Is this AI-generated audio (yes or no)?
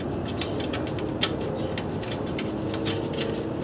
no